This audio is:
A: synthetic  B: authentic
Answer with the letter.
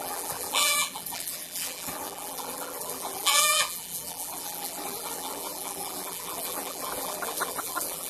A